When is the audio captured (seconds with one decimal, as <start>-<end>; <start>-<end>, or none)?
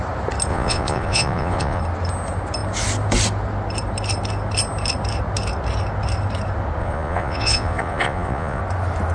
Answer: 0.0-0.5; 1.8-6.8; 8.6-9.1